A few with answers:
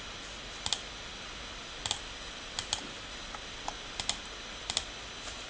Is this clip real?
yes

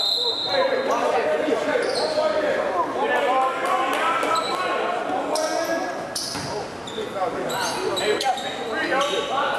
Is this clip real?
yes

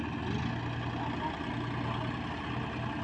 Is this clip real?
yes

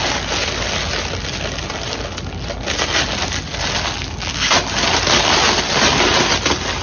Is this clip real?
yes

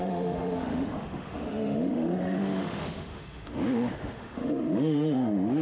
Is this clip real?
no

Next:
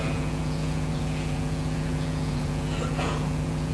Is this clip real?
no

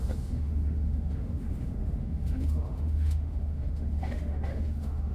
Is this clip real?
no